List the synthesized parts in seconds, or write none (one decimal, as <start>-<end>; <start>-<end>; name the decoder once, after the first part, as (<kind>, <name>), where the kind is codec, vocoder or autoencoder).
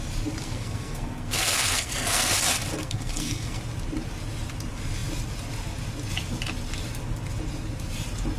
0.4-2.3 (codec, SNAC); 2.8-3.6